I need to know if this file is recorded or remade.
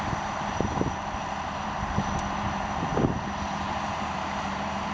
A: remade